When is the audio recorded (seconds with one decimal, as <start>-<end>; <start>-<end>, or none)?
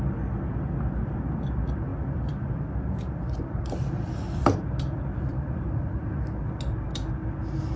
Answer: 0.0-1.9; 4.4-5.3; 6.4-7.8